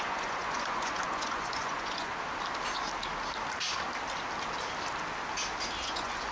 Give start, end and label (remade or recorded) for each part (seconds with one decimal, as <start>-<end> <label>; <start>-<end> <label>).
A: 0.0-2.1 remade; 2.1-5.8 recorded; 5.8-6.3 remade